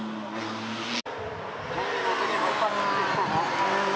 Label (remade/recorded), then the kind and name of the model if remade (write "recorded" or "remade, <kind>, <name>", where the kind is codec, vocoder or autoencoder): recorded